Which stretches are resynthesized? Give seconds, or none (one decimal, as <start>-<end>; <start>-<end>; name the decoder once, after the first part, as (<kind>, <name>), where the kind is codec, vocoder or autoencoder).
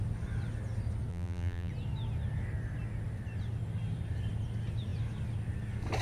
1.1-1.7 (vocoder, BigVGAN v2)